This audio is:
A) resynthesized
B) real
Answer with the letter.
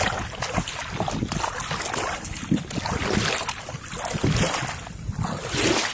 B